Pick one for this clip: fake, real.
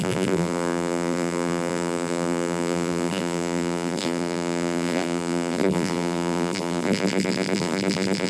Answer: fake